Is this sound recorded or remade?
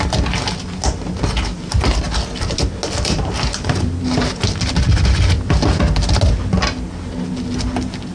recorded